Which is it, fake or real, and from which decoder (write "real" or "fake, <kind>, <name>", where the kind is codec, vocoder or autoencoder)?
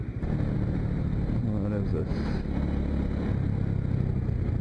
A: real